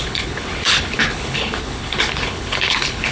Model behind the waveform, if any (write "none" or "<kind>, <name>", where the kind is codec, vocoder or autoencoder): codec, HILCodec